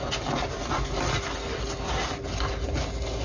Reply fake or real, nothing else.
real